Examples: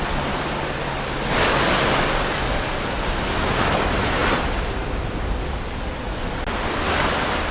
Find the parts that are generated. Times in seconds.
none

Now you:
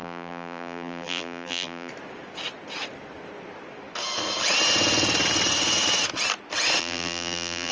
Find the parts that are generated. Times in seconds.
0.0-1.9 (vocoder, BigVGAN v2); 6.8-7.7